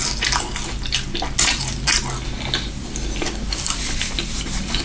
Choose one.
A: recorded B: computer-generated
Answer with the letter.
A